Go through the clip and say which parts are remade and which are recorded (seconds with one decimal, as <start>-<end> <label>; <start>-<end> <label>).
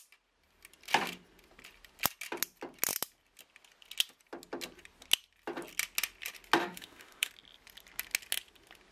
0.0-6.6 recorded; 6.6-7.3 remade; 7.3-8.9 recorded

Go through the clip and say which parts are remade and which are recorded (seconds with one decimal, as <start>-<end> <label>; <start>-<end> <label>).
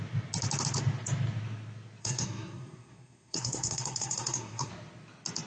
0.0-2.0 recorded; 2.0-4.7 remade; 4.7-5.5 recorded